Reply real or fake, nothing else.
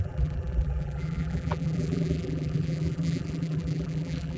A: fake